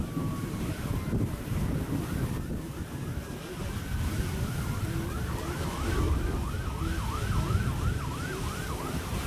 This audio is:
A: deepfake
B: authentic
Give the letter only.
B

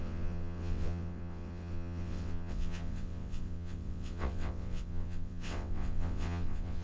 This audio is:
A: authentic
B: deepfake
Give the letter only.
B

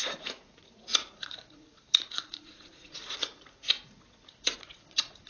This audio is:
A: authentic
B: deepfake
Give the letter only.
B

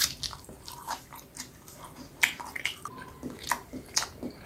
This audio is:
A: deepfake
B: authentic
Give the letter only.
A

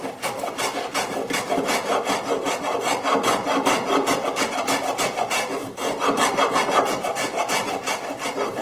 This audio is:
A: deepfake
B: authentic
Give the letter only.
A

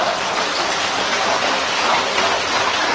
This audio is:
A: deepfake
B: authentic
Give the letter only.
B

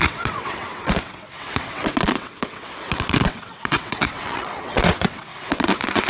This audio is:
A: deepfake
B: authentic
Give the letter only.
A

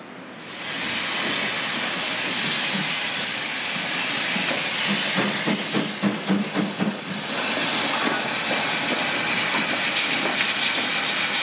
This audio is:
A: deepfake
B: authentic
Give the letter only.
B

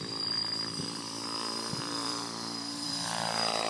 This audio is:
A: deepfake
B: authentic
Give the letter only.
A